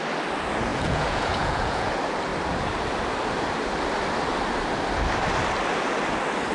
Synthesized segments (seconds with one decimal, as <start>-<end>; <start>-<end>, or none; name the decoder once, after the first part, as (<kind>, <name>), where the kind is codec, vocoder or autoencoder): 0.7-1.9 (vocoder, Vocos)